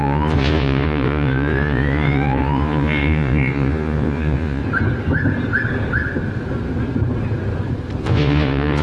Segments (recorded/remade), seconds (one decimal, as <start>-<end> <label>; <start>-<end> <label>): 0.0-4.6 remade; 4.6-8.0 recorded; 8.0-8.8 remade